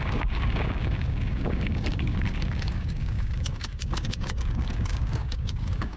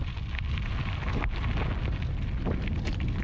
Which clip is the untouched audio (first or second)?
second